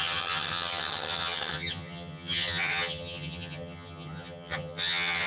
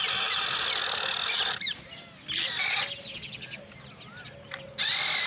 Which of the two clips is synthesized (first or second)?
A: first